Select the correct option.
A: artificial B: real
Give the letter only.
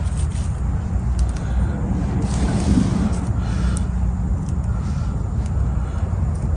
B